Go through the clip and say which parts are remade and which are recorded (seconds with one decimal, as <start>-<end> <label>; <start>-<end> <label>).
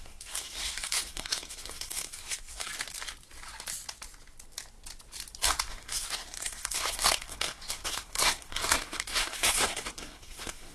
0.0-2.7 remade; 2.7-5.7 recorded; 5.7-10.7 remade